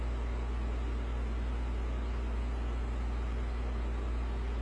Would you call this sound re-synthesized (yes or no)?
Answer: no